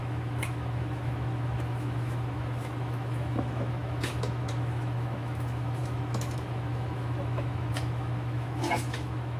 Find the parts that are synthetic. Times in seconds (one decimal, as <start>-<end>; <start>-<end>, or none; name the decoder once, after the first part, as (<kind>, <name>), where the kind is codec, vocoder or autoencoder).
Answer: 0.0-9.4 (autoencoder, DAC-VAE)